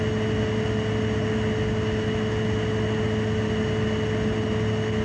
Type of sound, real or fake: real